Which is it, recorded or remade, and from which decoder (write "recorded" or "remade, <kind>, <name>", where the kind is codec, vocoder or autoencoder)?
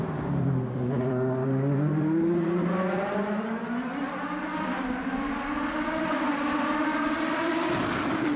remade, vocoder, BigVGAN v2